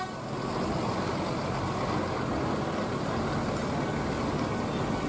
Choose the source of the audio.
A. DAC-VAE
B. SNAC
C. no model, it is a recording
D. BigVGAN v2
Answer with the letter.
C